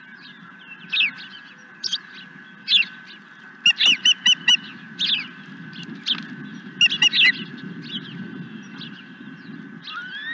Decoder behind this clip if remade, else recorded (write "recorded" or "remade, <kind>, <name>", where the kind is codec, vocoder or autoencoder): recorded